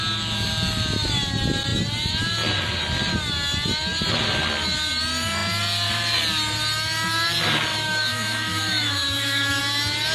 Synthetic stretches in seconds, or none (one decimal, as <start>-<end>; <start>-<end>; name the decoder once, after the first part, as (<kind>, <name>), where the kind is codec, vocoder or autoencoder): 7.7-9.6 (autoencoder, DAC-VAE)